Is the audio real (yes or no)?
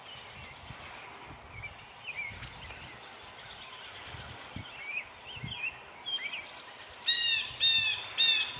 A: yes